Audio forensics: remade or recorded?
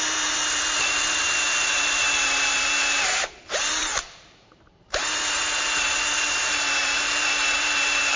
remade